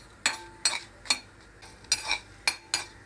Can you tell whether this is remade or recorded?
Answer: recorded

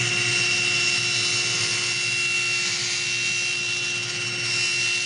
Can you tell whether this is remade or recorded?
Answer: recorded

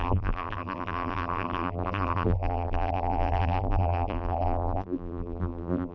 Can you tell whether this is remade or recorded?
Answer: remade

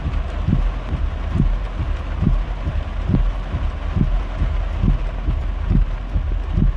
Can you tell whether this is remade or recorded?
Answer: recorded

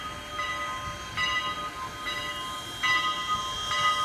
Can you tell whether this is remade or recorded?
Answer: recorded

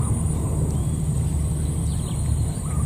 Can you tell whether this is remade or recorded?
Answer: remade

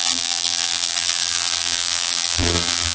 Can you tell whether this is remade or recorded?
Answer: remade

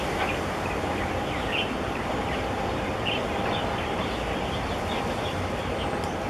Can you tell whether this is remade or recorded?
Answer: recorded